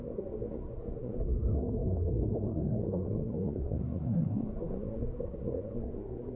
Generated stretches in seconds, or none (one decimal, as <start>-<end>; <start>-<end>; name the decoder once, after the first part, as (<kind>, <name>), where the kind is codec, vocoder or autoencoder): 0.0-6.4 (codec, SNAC)